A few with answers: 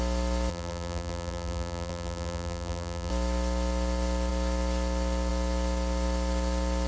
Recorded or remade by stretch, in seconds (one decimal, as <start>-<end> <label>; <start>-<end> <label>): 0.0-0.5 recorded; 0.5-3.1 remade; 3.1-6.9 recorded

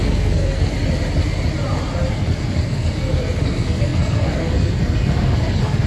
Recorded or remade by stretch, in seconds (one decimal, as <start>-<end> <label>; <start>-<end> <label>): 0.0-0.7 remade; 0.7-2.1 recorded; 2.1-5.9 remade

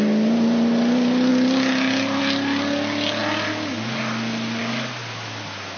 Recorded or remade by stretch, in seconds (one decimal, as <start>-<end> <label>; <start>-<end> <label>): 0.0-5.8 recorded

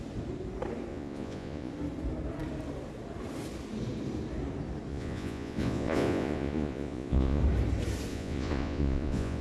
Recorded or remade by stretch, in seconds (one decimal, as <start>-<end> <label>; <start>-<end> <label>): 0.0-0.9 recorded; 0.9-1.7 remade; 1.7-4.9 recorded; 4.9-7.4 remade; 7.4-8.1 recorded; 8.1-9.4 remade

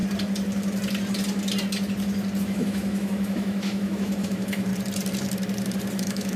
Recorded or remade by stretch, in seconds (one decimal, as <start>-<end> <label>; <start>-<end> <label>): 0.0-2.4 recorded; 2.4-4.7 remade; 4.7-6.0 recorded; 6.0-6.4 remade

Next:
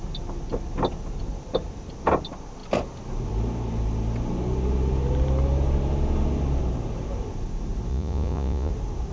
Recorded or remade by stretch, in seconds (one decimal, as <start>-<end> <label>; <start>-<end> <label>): 0.0-7.9 recorded; 7.9-8.7 remade; 8.7-9.1 recorded

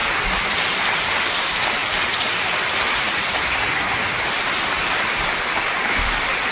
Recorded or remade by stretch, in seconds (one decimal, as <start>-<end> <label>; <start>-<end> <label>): 0.0-1.8 remade; 1.8-4.6 recorded; 4.6-6.5 remade